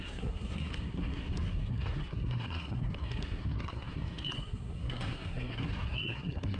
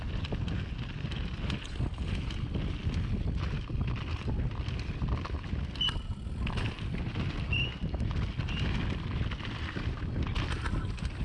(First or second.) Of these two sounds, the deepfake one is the first